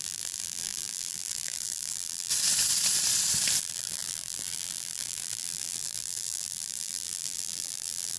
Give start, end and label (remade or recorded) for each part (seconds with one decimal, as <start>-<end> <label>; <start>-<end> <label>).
0.0-2.3 remade; 2.3-3.6 recorded; 3.6-8.2 remade